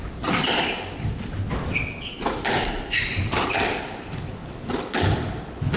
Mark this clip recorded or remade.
recorded